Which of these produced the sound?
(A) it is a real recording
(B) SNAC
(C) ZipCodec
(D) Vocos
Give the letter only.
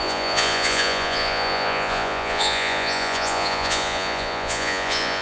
D